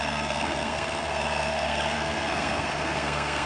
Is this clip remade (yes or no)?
yes